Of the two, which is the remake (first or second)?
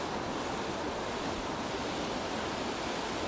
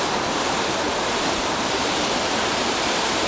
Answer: second